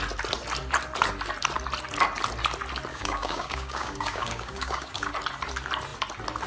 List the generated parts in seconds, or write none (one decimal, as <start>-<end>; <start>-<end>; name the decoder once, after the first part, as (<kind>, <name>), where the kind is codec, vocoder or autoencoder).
2.9-5.1 (codec, DAC)